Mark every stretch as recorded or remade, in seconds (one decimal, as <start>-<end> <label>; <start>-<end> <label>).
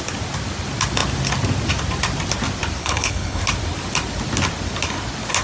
0.0-2.8 recorded; 2.8-3.4 remade; 3.4-5.4 recorded